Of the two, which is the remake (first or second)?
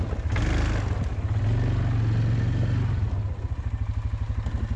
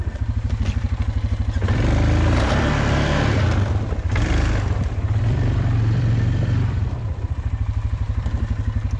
second